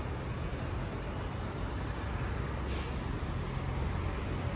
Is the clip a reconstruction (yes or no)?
no